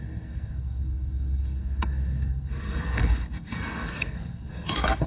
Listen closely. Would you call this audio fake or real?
fake